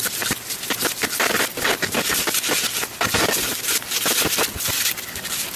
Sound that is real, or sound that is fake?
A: real